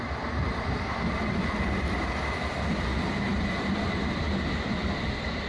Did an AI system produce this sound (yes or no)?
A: no